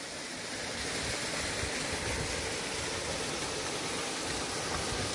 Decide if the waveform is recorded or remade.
recorded